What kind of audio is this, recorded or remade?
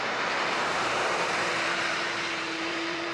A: remade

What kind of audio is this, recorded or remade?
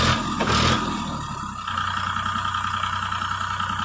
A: recorded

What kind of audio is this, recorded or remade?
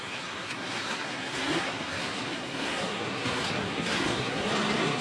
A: remade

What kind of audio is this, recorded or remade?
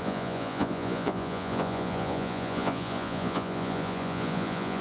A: remade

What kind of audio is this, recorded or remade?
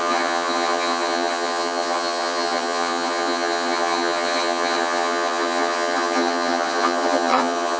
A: remade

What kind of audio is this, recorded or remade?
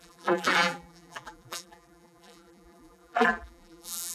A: remade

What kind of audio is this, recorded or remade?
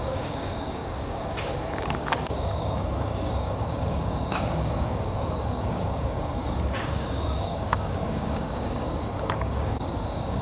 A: remade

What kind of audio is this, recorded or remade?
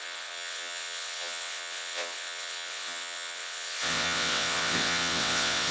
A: remade